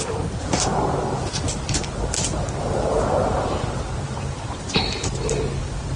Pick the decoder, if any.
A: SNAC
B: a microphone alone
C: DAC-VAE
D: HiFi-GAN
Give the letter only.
B